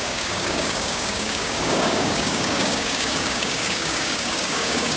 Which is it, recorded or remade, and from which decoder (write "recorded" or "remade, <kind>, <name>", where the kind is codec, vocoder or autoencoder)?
remade, codec, DAC